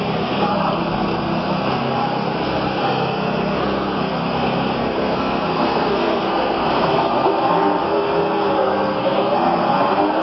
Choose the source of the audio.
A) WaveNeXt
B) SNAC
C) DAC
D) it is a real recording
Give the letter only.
B